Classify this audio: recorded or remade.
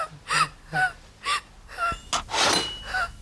recorded